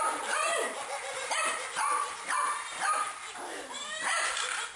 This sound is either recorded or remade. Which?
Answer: remade